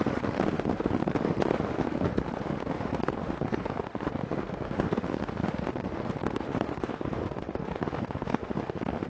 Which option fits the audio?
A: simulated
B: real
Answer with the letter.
A